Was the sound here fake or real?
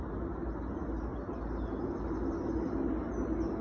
real